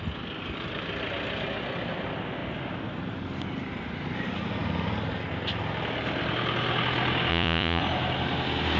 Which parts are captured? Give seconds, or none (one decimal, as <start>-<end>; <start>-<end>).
0.0-7.3; 7.8-8.8